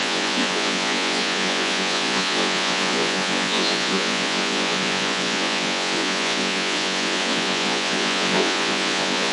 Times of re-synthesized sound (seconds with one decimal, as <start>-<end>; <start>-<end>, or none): 0.0-9.3